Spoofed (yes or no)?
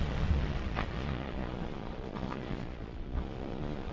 yes